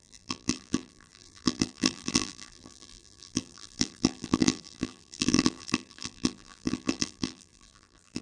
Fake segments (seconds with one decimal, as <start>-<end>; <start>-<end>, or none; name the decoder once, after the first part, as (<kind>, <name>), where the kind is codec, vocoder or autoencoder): 0.0-8.2 (vocoder, BigVGAN v2)